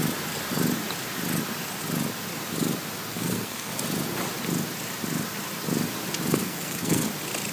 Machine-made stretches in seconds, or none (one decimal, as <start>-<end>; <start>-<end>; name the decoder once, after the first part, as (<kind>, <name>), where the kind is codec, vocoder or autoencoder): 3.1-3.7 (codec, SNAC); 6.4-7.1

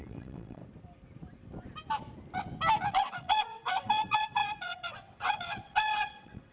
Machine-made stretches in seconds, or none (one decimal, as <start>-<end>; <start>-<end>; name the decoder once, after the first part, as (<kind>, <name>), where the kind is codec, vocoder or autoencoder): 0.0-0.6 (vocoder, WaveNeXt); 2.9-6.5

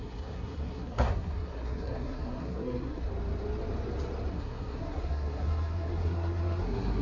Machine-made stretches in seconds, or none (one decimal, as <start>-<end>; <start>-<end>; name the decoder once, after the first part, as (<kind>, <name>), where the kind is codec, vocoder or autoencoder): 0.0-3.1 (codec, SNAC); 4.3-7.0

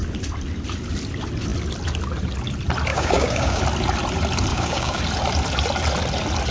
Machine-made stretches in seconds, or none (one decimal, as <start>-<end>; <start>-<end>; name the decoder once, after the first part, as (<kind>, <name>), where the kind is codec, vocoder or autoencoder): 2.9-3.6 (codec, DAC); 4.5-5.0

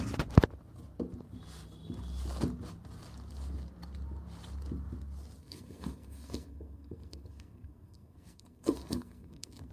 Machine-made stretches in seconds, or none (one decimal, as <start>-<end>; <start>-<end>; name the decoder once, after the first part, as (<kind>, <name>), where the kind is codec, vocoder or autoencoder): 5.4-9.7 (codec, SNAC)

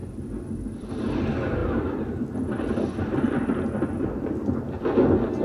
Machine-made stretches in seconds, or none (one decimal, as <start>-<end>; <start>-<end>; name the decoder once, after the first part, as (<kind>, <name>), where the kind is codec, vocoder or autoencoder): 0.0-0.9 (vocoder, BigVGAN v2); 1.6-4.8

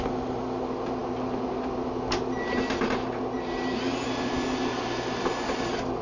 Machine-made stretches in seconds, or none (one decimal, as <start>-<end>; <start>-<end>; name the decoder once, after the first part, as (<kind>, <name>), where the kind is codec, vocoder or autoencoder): none

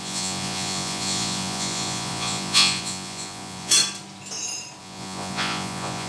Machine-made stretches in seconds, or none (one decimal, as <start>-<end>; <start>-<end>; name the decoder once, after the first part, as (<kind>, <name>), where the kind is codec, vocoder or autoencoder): 0.0-3.7 (vocoder, Vocos); 4.8-6.1